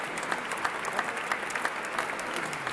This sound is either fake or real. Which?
real